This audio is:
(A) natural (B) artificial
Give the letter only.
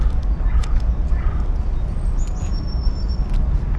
A